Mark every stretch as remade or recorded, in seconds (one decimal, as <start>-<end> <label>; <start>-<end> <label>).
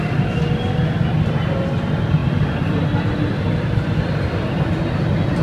0.0-2.2 recorded; 2.2-5.4 remade